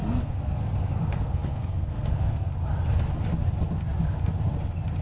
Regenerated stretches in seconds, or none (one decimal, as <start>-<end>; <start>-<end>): 0.0-2.5